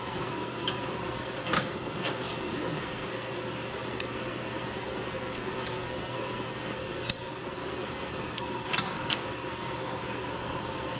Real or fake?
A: fake